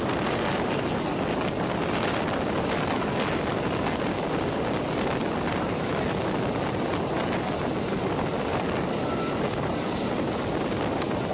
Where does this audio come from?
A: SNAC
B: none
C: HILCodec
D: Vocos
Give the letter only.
B